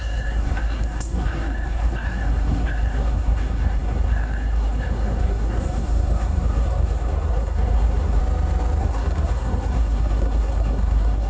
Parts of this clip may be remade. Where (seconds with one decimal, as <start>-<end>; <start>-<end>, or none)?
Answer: 0.0-8.2; 8.8-11.3